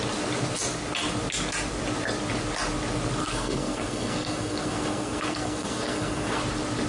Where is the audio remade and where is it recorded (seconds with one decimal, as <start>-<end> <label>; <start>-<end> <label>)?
0.0-3.2 recorded; 3.2-6.4 remade; 6.4-6.9 recorded